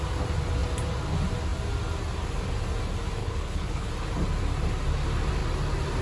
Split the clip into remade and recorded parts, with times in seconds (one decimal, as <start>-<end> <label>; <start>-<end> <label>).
0.0-3.2 recorded; 3.2-3.9 remade; 3.9-6.0 recorded

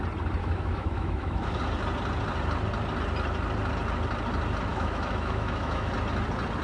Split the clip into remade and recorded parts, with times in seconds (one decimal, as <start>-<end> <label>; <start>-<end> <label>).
0.0-0.4 recorded; 0.4-1.6 remade; 1.6-4.7 recorded; 4.7-5.9 remade; 5.9-6.6 recorded

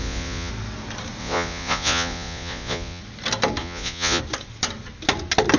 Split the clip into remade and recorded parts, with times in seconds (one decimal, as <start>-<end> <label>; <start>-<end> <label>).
0.0-0.5 remade; 0.5-1.2 recorded; 1.2-3.0 remade; 3.0-3.6 recorded; 3.6-4.2 remade; 4.2-5.6 recorded

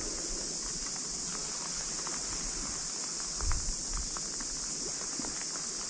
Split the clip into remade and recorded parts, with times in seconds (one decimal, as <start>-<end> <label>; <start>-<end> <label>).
0.0-5.9 recorded

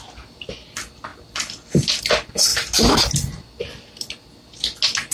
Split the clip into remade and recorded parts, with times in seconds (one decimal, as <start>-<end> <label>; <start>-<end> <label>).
0.0-5.1 recorded